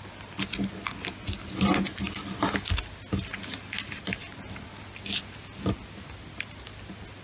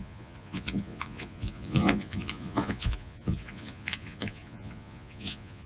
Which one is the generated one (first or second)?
second